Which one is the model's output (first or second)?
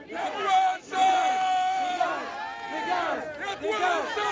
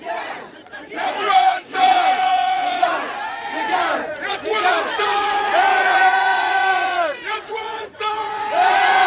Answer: second